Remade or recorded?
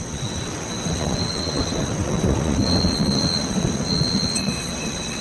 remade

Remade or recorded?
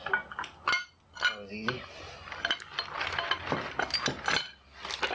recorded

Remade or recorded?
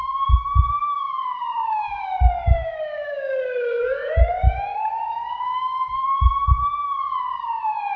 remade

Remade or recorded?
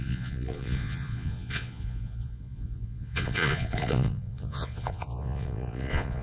remade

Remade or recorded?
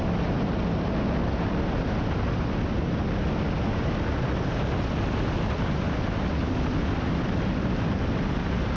recorded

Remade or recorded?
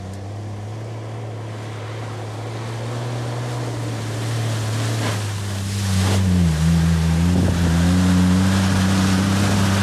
recorded